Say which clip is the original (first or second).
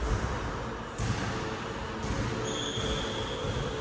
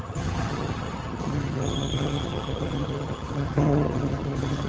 first